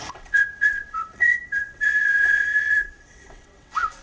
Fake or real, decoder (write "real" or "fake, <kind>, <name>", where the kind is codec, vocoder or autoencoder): fake, vocoder, WaveNeXt